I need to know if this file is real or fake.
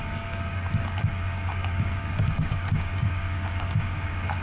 fake